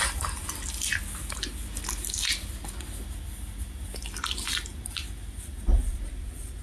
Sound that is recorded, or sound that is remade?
recorded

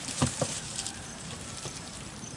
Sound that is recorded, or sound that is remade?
remade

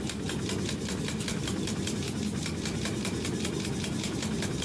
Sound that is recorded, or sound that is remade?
remade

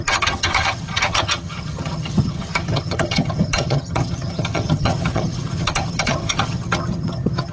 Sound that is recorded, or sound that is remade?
remade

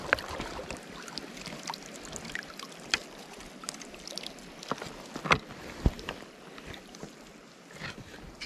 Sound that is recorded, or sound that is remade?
remade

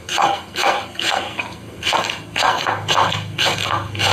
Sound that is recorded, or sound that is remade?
remade